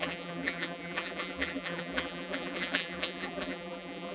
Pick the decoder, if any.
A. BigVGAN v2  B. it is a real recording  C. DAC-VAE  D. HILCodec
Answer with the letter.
A